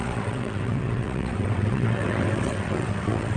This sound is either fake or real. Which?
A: fake